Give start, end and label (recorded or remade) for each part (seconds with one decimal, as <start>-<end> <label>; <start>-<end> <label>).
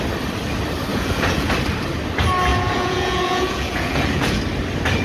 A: 0.0-0.9 recorded; 0.9-1.5 remade; 1.5-2.5 recorded; 2.5-4.4 remade; 4.4-5.0 recorded